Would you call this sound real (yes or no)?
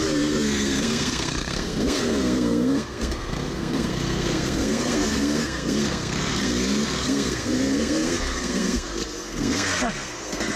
no